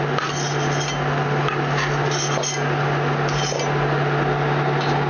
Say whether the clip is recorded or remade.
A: recorded